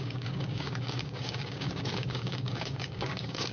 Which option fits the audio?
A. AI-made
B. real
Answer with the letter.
A